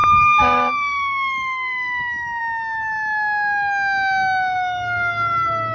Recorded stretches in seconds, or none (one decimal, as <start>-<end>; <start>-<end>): 2.4-5.7